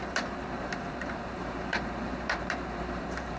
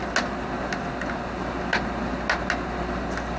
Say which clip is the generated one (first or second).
first